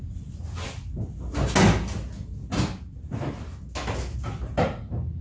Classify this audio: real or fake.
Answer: real